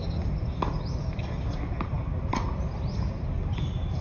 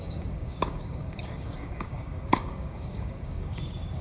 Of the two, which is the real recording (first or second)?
first